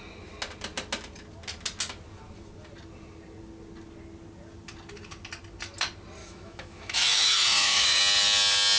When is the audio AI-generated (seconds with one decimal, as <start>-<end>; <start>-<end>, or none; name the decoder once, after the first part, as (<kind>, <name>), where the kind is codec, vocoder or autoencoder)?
6.2-8.0 (autoencoder, DAC-VAE)